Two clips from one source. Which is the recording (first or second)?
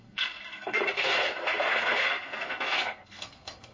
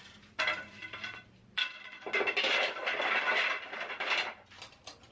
second